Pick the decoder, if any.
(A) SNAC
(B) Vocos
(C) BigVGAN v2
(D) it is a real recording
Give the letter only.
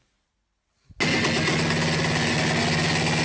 D